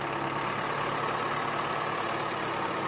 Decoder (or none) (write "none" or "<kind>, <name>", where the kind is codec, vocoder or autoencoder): none